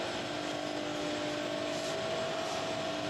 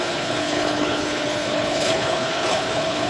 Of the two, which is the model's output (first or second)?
second